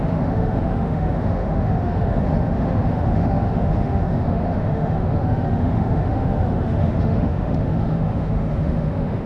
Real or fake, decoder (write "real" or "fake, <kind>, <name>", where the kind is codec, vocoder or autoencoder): fake, autoencoder, DAC-VAE